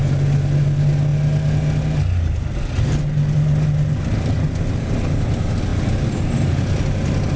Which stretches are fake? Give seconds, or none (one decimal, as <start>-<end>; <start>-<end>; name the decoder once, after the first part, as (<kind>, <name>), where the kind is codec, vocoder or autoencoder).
none